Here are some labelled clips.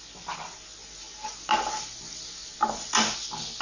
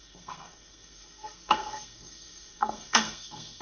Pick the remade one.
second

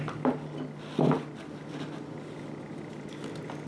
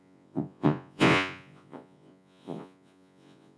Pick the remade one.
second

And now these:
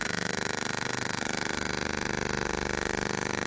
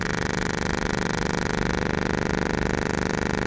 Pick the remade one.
first